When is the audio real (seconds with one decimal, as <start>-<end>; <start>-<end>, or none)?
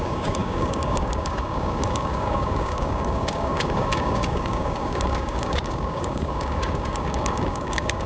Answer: none